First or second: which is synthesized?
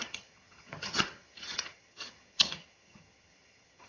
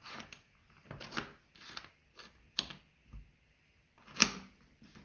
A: first